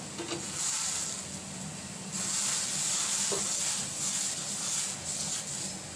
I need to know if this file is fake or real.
real